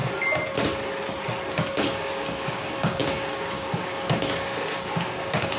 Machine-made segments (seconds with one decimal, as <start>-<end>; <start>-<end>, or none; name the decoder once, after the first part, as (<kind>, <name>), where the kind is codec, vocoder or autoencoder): 1.5-5.6 (codec, DAC)